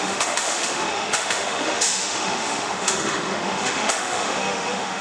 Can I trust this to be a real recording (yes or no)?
no